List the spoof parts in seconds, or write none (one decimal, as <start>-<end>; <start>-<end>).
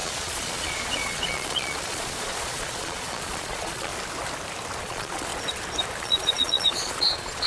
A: 0.0-3.9; 4.8-5.3; 6.0-7.5